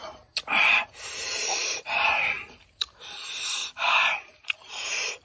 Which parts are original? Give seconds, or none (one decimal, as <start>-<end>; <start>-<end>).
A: 0.0-1.1